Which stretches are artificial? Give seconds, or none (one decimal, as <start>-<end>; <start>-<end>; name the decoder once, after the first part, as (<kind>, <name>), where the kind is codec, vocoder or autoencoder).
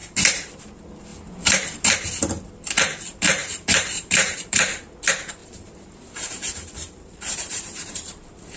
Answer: 0.0-0.6 (vocoder, BigVGAN v2); 3.4-4.8; 5.4-8.2